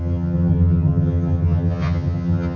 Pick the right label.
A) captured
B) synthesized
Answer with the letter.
B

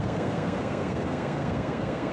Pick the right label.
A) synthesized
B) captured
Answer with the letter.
A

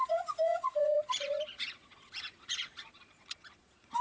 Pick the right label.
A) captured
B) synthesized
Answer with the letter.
B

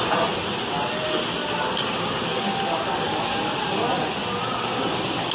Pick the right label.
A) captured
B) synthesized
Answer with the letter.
A